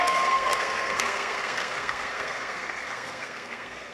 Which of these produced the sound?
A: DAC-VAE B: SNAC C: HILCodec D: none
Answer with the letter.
B